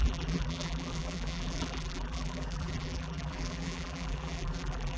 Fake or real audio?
fake